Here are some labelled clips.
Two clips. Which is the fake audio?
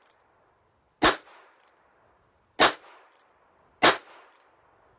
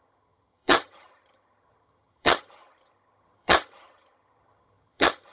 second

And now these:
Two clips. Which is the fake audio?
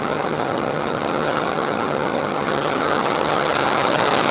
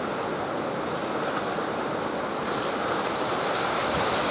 first